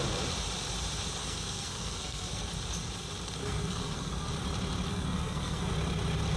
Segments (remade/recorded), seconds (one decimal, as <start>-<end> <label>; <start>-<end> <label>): 0.0-1.2 recorded; 1.2-2.5 remade; 2.5-3.4 recorded; 3.4-4.3 remade; 4.3-4.9 recorded; 4.9-5.7 remade; 5.7-6.4 recorded